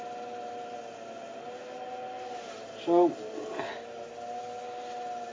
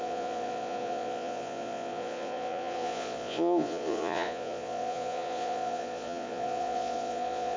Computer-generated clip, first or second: second